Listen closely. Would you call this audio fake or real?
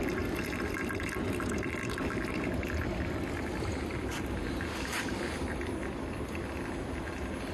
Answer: real